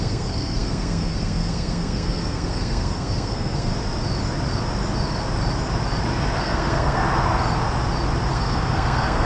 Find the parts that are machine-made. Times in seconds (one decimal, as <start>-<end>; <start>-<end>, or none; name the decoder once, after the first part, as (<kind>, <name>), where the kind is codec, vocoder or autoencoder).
0.0-3.7 (codec, SNAC); 6.4-7.0; 8.3-9.3